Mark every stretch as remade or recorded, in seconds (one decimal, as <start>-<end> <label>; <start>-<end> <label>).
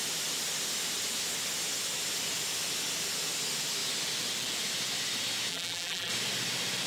0.0-5.5 recorded; 5.5-6.1 remade; 6.1-6.9 recorded